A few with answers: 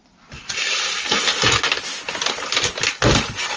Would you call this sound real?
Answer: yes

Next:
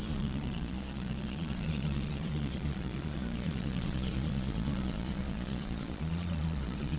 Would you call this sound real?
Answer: no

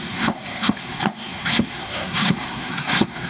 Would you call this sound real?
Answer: no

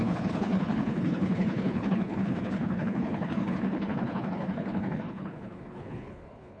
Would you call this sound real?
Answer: no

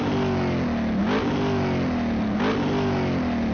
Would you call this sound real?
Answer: yes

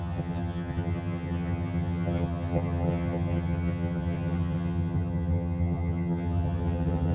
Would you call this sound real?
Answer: no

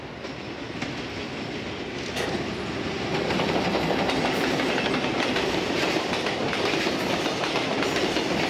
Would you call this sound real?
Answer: yes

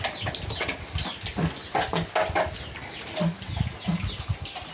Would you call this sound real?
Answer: yes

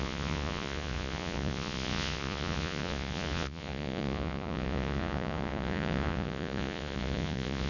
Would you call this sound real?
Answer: no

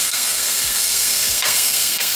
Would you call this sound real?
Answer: no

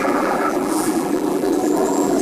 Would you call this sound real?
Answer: no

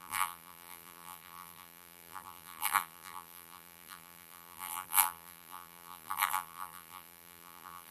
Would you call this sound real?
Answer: no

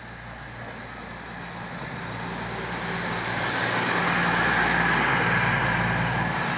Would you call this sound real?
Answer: yes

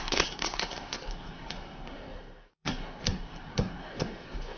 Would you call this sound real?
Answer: no